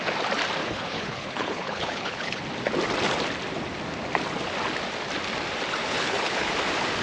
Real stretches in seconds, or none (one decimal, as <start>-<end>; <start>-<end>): 0.0-0.6; 2.4-5.8; 6.5-7.0